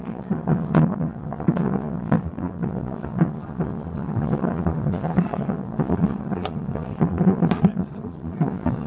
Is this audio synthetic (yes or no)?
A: yes